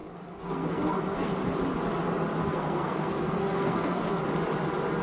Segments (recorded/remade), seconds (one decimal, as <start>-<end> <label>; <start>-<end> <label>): 0.0-1.3 remade; 1.3-2.4 recorded; 2.4-4.2 remade; 4.2-5.0 recorded